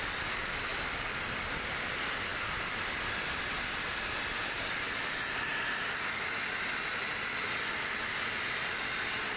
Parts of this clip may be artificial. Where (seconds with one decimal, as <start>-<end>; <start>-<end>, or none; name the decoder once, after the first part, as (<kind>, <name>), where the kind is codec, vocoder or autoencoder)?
none